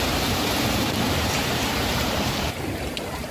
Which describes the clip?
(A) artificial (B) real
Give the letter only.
A